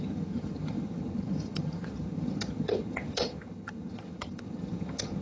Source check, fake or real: fake